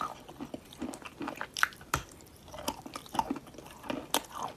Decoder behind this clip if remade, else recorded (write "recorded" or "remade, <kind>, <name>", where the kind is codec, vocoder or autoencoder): recorded